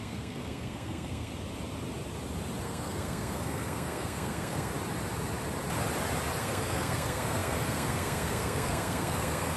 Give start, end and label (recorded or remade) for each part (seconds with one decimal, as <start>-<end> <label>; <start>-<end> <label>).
0.0-1.3 remade; 1.3-2.6 recorded; 2.6-4.7 remade; 4.7-6.4 recorded; 6.4-9.6 remade